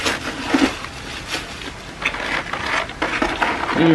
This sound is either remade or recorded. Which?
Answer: recorded